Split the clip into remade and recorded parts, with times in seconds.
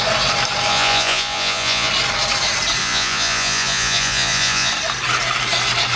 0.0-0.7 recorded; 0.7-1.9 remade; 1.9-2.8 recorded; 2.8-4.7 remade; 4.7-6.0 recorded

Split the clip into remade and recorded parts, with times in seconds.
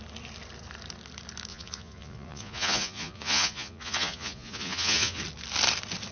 0.0-1.5 recorded; 1.5-5.2 remade; 5.2-6.1 recorded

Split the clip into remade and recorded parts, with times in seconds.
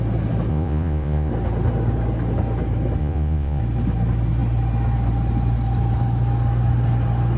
0.0-0.5 recorded; 0.5-1.3 remade; 1.3-3.0 recorded; 3.0-3.6 remade; 3.6-7.4 recorded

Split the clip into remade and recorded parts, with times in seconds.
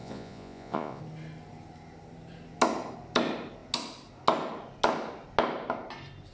0.0-1.0 remade; 1.0-6.3 recorded